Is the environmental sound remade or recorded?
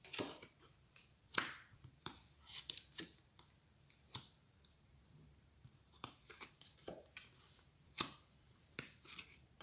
remade